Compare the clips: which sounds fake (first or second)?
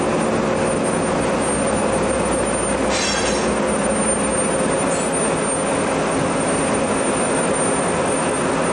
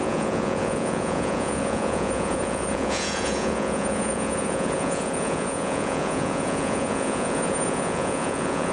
second